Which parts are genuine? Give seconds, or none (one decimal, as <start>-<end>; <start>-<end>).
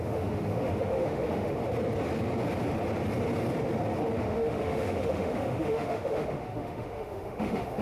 1.6-4.2